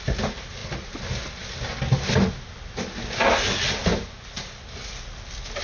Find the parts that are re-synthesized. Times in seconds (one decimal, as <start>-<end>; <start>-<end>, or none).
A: none